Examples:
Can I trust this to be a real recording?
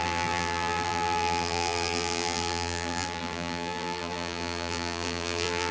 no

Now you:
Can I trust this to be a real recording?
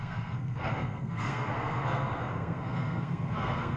no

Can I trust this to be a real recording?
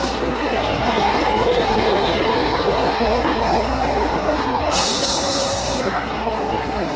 no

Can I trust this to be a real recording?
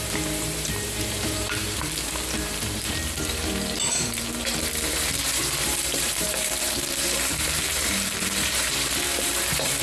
no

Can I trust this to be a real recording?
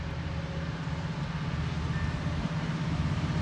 yes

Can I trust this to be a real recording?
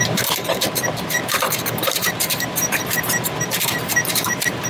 no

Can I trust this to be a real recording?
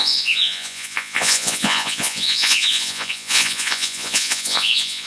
no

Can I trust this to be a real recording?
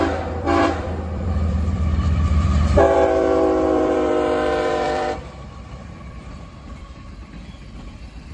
no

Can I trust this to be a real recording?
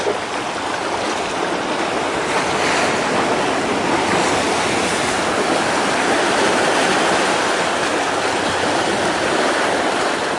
yes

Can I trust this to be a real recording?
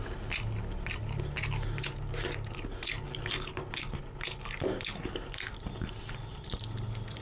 yes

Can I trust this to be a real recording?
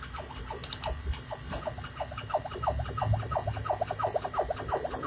yes